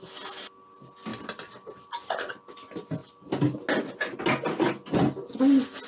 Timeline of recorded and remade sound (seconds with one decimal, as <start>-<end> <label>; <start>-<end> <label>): 0.0-1.1 recorded; 1.1-2.3 remade; 2.3-5.9 recorded